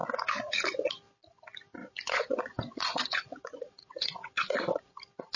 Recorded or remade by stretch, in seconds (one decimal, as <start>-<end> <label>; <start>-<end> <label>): 0.0-1.8 recorded; 1.8-5.0 remade; 5.0-5.4 recorded